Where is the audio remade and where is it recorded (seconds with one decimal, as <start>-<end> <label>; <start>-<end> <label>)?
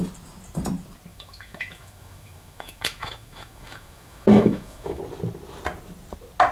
0.0-1.1 recorded; 1.1-5.0 remade; 5.0-6.5 recorded